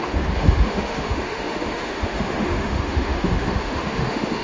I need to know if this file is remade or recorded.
remade